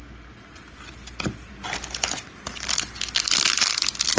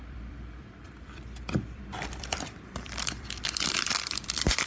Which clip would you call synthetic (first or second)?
second